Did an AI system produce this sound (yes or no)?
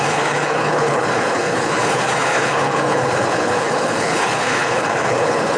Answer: yes